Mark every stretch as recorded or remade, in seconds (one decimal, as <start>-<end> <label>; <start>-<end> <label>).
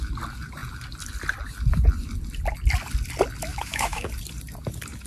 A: 0.0-3.5 recorded; 3.5-4.1 remade; 4.1-5.1 recorded